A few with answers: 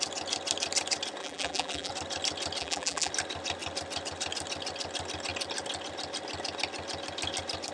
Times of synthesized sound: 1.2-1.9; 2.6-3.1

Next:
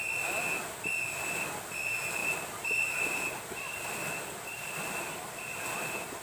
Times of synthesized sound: 2.2-6.2

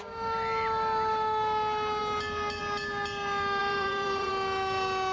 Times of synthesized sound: 3.6-4.3

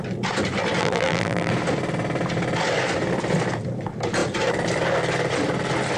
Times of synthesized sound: 0.8-1.5

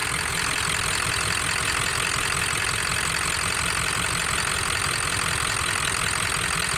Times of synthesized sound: none